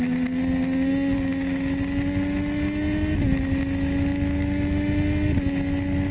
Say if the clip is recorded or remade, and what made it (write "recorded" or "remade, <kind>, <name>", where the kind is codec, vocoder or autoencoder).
recorded